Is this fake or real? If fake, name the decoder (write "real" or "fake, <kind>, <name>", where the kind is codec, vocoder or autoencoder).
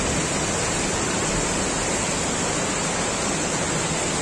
real